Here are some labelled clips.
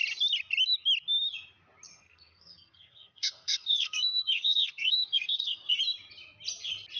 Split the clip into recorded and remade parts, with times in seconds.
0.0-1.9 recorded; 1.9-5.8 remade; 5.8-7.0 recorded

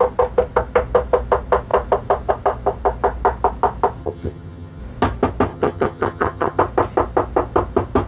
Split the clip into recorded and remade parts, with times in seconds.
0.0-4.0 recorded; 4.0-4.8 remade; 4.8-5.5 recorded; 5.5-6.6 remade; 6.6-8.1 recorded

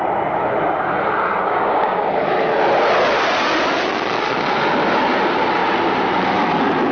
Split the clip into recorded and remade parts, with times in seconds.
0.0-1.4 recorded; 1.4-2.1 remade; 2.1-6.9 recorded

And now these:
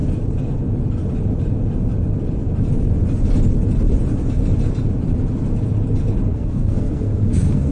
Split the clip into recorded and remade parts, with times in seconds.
0.0-6.3 recorded; 6.3-7.7 remade

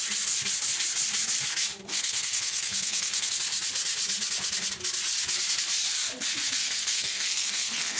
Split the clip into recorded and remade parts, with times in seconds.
0.0-1.9 recorded; 1.9-3.3 remade; 3.3-6.6 recorded; 6.6-8.0 remade